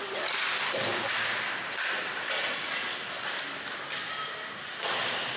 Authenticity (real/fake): real